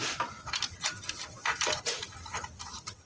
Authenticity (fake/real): fake